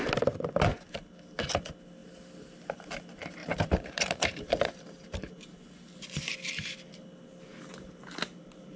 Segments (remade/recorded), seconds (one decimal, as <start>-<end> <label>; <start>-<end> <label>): 0.0-3.4 recorded; 3.4-6.3 remade; 6.3-8.8 recorded